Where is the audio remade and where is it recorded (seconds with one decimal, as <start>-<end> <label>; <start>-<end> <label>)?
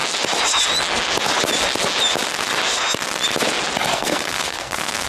0.0-3.9 recorded; 3.9-5.1 remade